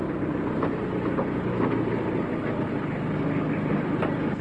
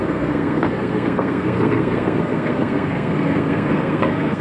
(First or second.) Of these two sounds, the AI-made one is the second